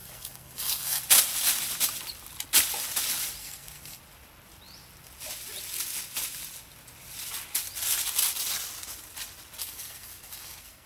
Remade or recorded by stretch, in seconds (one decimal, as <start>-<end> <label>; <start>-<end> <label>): 0.0-1.0 remade; 1.0-3.4 recorded; 3.4-4.0 remade; 4.0-9.6 recorded; 9.6-10.9 remade